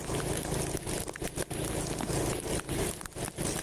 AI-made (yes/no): no